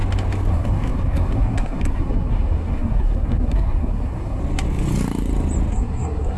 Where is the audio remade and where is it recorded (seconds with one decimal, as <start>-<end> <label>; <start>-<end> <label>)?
0.0-0.5 recorded; 0.5-4.4 remade; 4.4-5.7 recorded; 5.7-6.4 remade